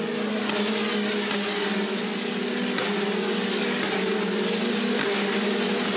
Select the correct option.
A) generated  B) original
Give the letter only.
B